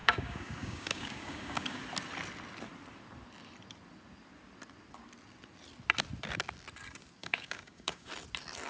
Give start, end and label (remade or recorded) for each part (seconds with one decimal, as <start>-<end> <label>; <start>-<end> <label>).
0.0-1.8 remade; 1.8-7.2 recorded; 7.2-8.1 remade; 8.1-8.7 recorded